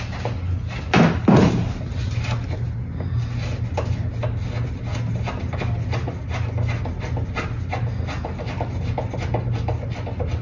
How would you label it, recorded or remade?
recorded